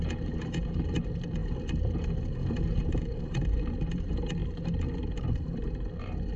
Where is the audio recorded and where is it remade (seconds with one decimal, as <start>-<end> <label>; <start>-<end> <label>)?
0.0-6.4 remade